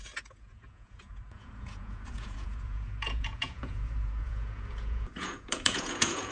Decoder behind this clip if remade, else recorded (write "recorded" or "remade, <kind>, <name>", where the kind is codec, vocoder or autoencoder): remade, vocoder, Vocos